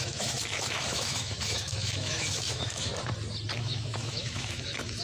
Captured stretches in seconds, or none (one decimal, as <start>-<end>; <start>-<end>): 2.9-3.6